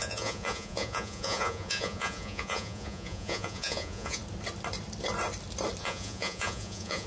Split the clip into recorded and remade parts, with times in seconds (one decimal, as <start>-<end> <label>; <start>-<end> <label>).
0.0-4.2 remade; 4.2-5.8 recorded; 5.8-7.1 remade